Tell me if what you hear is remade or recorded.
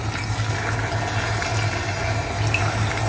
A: recorded